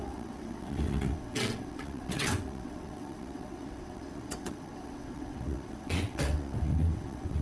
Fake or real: fake